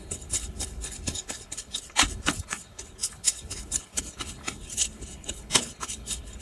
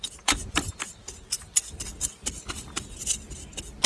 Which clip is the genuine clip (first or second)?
second